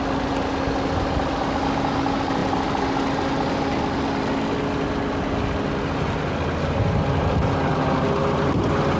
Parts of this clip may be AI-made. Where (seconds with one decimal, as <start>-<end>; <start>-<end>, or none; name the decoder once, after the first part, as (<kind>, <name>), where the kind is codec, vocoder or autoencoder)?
none